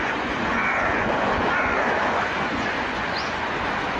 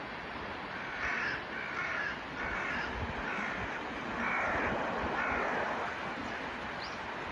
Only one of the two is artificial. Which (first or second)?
first